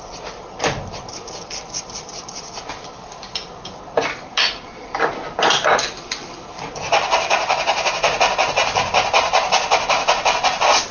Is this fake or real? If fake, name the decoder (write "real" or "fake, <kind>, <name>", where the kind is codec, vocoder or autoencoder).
real